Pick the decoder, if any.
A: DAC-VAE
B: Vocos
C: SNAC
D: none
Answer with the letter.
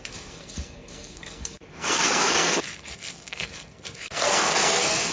C